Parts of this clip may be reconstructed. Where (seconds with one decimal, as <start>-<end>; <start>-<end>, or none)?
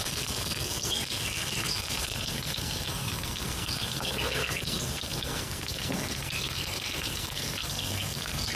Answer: 0.0-8.6